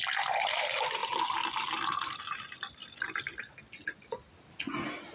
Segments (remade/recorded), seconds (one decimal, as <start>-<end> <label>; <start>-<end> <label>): 0.0-5.1 recorded